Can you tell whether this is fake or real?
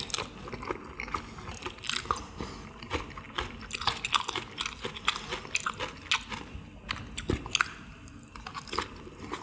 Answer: real